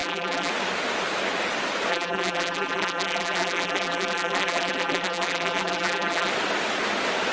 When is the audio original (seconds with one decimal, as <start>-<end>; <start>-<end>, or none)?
0.5-1.9; 6.3-7.3